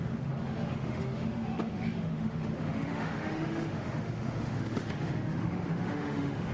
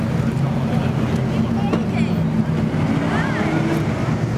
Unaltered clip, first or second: second